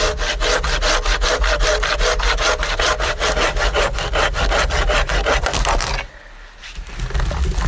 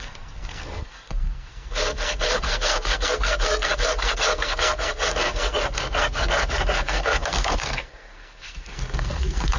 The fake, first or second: second